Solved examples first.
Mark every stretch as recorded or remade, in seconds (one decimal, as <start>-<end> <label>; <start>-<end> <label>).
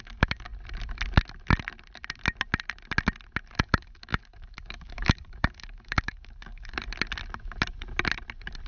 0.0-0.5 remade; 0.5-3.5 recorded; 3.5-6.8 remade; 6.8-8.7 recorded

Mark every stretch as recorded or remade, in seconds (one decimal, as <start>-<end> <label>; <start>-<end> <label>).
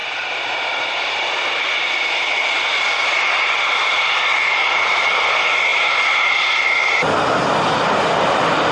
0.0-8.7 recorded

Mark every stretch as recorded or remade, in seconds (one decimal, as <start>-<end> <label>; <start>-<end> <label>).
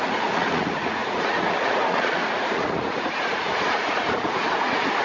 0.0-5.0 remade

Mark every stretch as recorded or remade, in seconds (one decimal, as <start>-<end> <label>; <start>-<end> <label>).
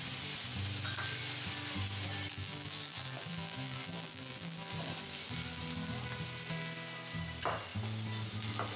0.0-2.3 recorded; 2.3-4.7 remade; 4.7-8.8 recorded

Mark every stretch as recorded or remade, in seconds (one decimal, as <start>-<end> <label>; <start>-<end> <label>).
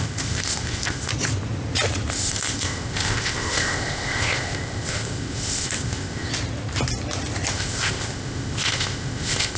0.0-1.1 remade; 1.1-2.1 recorded; 2.1-6.3 remade; 6.3-7.5 recorded; 7.5-9.6 remade